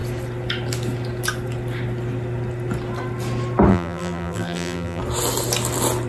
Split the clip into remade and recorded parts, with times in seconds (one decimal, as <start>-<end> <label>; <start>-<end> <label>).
0.0-3.7 recorded; 3.7-5.0 remade; 5.0-6.1 recorded